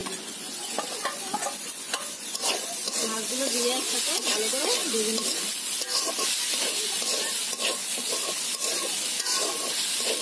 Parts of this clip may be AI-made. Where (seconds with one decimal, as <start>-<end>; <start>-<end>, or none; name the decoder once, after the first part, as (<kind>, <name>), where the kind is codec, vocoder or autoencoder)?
0.0-2.9 (vocoder, Vocos)